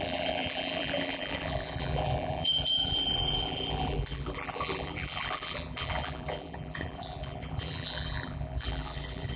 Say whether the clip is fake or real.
fake